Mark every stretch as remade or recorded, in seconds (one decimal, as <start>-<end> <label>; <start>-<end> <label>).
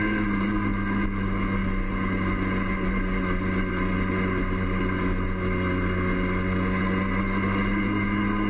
0.0-8.5 recorded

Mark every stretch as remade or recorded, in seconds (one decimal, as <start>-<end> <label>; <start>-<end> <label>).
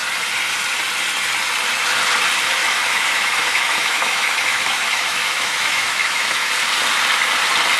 0.0-2.6 recorded; 2.6-6.5 remade; 6.5-7.8 recorded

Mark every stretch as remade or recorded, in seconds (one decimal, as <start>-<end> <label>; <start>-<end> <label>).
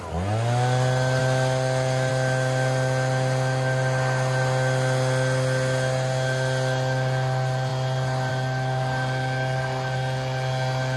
0.0-11.0 recorded